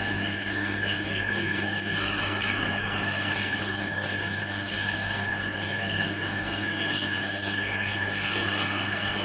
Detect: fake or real fake